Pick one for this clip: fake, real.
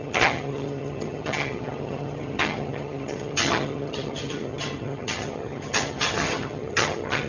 fake